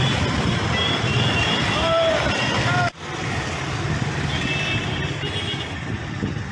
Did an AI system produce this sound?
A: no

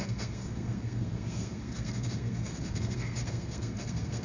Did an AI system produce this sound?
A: yes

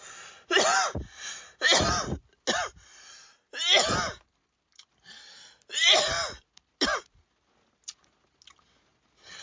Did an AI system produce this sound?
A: no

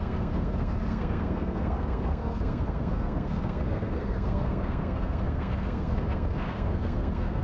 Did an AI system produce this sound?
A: yes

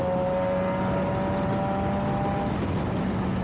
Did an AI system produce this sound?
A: no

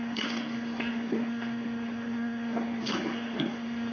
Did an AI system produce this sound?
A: yes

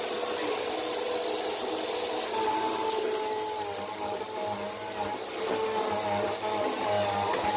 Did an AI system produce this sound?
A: no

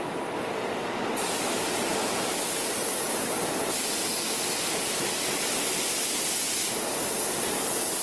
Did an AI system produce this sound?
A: no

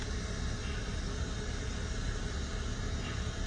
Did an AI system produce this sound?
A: no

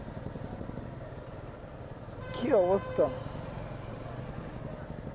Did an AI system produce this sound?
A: no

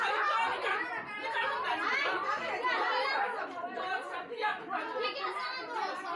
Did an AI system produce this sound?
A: no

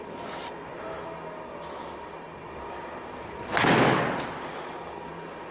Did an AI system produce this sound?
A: no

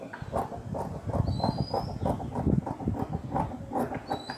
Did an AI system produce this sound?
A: no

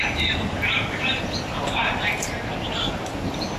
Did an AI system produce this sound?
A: no